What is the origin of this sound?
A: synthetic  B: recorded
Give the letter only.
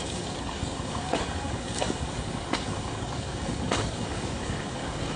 A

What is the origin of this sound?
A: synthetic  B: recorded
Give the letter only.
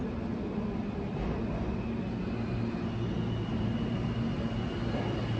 B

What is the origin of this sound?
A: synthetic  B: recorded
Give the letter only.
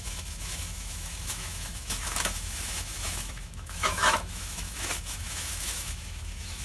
A